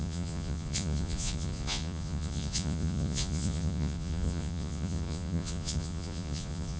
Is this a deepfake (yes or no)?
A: yes